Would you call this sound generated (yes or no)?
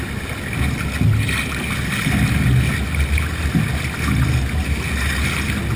no